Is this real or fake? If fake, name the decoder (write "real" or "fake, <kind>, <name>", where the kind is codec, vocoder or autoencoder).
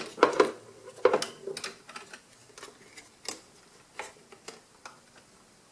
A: real